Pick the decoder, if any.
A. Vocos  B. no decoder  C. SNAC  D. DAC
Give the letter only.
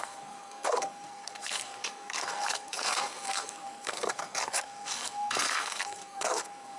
C